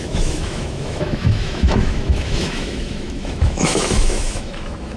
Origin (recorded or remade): remade